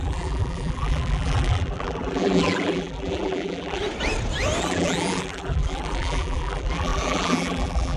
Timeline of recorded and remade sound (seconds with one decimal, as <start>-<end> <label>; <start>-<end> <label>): 0.0-3.8 remade; 3.8-4.6 recorded; 4.6-8.0 remade